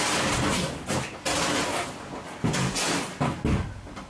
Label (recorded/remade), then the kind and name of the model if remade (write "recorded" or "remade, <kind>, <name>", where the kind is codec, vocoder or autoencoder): recorded